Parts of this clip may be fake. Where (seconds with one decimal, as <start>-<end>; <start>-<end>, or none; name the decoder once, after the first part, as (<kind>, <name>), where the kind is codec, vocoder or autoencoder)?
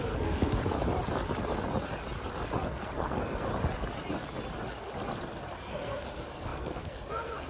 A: 0.0-0.6 (codec, SNAC); 2.6-3.5; 5.7-7.5